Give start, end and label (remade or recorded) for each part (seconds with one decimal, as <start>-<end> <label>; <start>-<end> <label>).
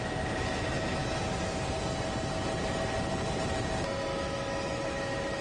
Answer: 0.0-4.1 recorded; 4.1-5.4 remade